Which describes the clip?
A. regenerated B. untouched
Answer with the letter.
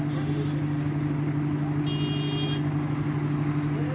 B